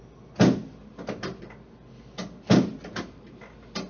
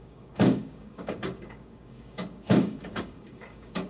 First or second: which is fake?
second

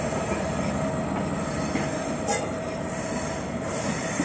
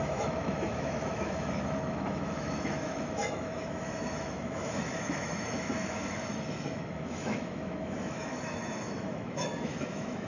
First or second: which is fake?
second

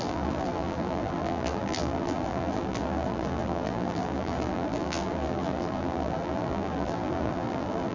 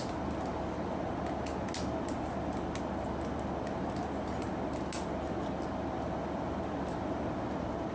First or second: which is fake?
first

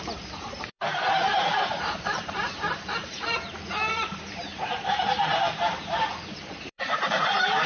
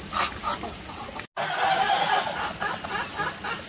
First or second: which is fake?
first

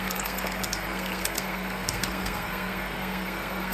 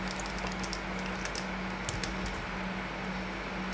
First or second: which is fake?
first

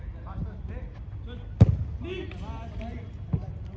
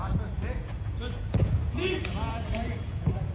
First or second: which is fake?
second